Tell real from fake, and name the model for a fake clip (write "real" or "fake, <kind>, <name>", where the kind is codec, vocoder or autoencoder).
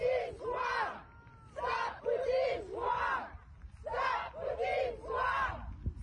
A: real